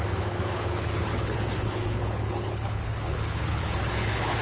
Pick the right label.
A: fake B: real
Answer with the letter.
A